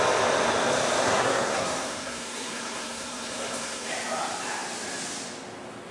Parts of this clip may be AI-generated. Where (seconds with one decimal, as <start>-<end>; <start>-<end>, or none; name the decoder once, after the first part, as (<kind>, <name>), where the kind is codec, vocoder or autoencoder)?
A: 1.0-3.9 (codec, SNAC)